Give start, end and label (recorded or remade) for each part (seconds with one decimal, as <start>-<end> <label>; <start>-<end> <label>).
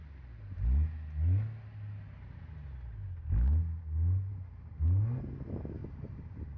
0.0-4.3 recorded; 4.3-4.8 remade; 4.8-5.8 recorded; 5.8-6.6 remade